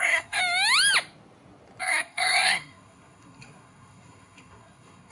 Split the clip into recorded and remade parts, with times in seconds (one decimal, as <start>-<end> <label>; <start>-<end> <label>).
0.0-0.4 remade; 0.4-1.8 recorded; 1.8-5.1 remade